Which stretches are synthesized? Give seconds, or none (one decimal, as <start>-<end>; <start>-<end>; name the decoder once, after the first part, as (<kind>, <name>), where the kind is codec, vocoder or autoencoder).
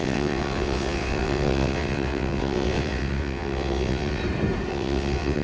0.0-4.2 (vocoder, WaveNeXt); 4.7-5.4